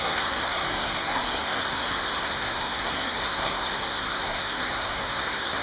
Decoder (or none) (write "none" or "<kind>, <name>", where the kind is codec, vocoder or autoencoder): codec, SNAC